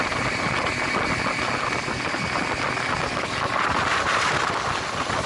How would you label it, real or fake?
real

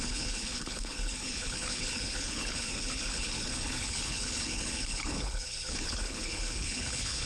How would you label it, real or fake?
fake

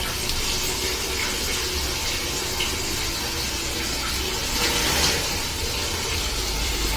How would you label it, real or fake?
real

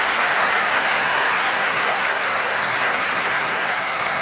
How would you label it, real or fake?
fake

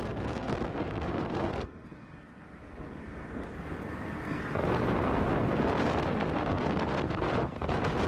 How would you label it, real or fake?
fake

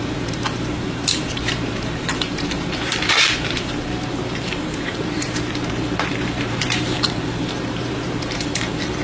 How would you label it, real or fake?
fake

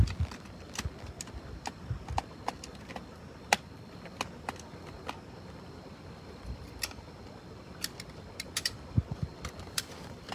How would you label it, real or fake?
real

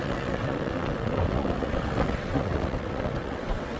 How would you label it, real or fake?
fake